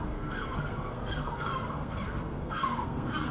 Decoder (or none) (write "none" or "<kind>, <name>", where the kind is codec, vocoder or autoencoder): codec, SNAC